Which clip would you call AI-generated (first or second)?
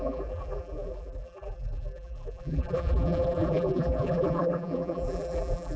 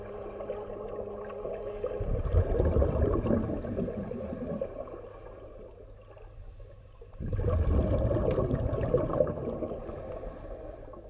first